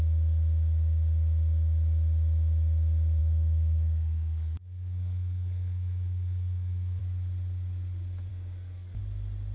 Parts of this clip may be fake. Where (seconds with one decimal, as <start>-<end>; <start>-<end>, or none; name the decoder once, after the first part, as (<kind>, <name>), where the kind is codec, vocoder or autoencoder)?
3.2-7.0 (codec, SNAC); 8.3-9.0